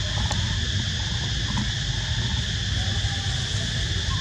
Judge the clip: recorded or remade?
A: recorded